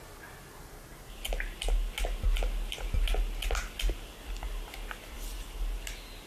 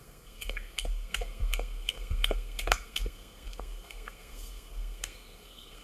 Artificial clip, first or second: second